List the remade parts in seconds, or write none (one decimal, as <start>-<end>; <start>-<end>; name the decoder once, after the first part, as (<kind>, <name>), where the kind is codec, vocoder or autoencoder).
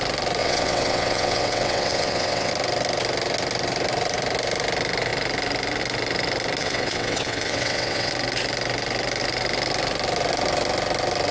0.4-2.5 (vocoder, WaveNeXt); 6.6-8.1